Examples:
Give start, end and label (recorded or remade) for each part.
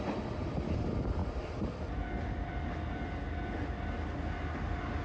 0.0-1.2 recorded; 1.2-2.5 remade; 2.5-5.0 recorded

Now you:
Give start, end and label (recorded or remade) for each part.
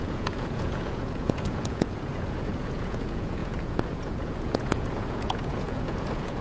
0.0-6.4 remade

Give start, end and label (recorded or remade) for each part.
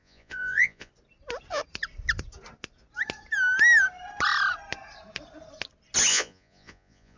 0.0-0.9 remade; 0.9-6.1 recorded; 6.1-7.2 remade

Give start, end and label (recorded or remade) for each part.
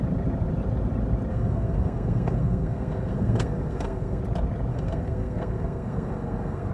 0.0-1.3 recorded; 1.3-4.2 remade; 4.2-4.7 recorded; 4.7-6.7 remade